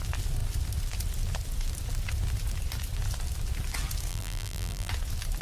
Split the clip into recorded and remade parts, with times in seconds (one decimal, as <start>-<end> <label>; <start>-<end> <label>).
0.0-4.1 recorded; 4.1-4.9 remade; 4.9-5.4 recorded